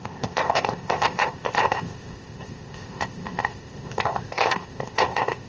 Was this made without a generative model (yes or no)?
no